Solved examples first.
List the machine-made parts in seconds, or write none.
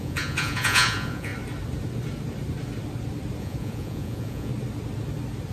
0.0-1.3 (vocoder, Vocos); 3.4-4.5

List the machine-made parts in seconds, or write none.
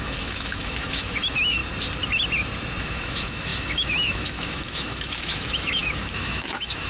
0.0-1.6 (autoencoder, DAC-VAE); 2.8-6.9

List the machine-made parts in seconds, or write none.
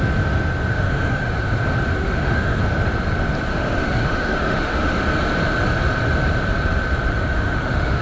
0.7-1.6 (autoencoder, DAC-VAE); 2.0-2.6; 3.5-5.0; 7.1-8.0